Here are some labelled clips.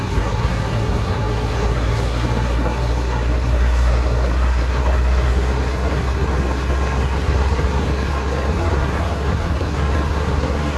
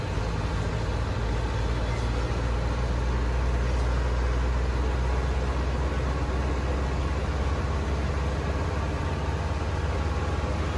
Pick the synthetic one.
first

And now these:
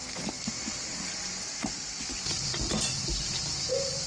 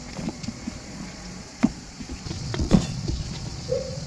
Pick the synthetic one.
second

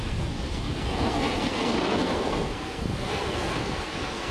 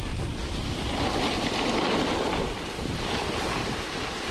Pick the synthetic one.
first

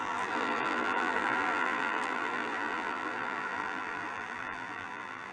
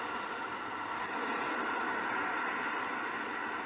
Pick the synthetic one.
first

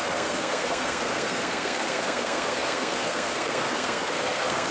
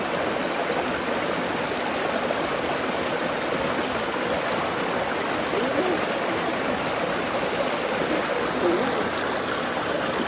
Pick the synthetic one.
first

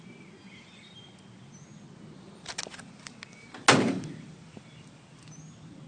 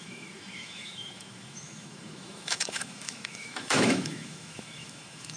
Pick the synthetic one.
second